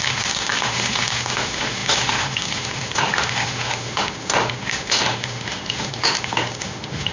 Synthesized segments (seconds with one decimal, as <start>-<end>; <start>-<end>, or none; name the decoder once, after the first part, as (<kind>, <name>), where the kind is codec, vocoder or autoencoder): 0.0-7.1 (autoencoder, DAC-VAE)